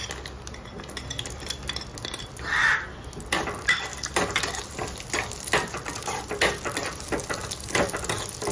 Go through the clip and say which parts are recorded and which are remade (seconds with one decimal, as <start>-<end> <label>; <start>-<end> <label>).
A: 0.0-8.5 recorded